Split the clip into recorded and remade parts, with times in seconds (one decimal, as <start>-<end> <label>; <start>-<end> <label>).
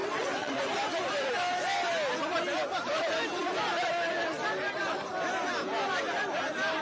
0.0-0.6 remade; 0.6-6.8 recorded